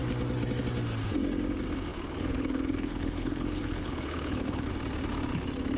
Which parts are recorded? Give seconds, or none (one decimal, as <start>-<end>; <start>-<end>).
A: 0.0-1.9; 4.7-5.8